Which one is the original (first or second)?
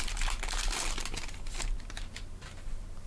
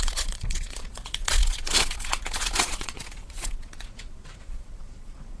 first